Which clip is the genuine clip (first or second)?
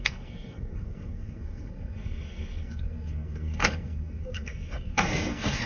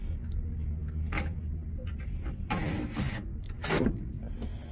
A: second